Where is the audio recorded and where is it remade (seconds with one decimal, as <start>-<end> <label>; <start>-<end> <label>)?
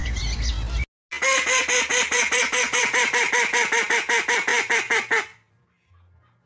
0.0-0.5 remade; 0.5-1.9 recorded; 1.9-3.9 remade; 3.9-4.5 recorded; 4.5-5.9 remade; 5.9-6.5 recorded